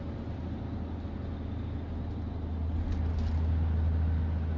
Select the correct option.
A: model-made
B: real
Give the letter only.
B